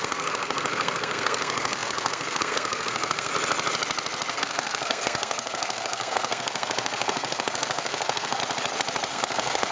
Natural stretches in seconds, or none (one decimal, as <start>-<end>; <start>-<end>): 3.3-4.3; 8.4-9.1

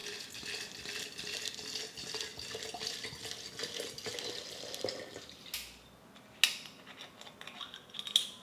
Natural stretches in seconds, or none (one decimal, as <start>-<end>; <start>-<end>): 0.0-8.4

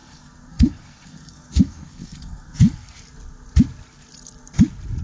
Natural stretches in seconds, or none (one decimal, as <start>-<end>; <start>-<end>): 3.0-5.0

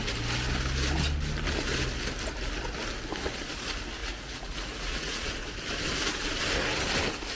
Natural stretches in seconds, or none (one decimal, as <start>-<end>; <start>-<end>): 0.0-4.0; 5.3-7.3

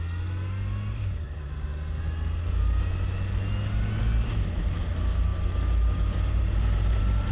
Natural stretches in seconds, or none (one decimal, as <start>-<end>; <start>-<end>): 0.0-7.3

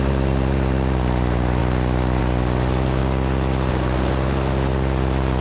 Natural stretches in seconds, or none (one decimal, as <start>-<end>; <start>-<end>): 1.6-2.2; 3.0-3.7